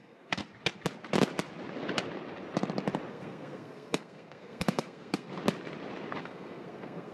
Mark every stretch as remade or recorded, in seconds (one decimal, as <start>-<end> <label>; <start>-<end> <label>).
0.0-0.4 remade; 0.4-3.1 recorded; 3.1-5.3 remade; 5.3-6.2 recorded; 6.2-7.1 remade